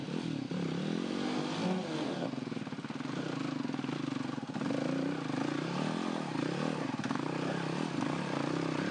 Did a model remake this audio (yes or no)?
no